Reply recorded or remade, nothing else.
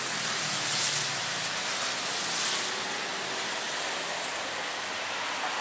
recorded